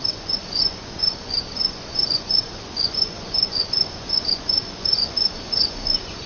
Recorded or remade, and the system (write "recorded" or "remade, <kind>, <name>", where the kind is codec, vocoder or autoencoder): remade, vocoder, Vocos